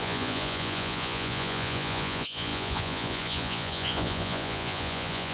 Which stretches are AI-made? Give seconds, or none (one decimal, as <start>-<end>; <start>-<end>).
0.0-5.3